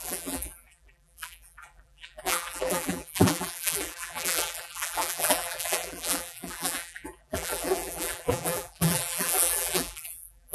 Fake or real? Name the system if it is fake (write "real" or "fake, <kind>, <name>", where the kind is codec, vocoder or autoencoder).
fake, vocoder, BigVGAN v2